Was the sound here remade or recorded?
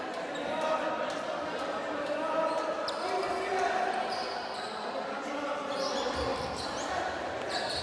recorded